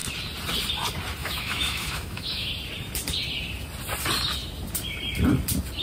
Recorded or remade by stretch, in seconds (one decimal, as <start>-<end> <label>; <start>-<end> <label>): 0.0-1.2 recorded; 1.2-2.5 remade; 2.5-5.8 recorded